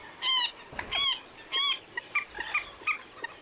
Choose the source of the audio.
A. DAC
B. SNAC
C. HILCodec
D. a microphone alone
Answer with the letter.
D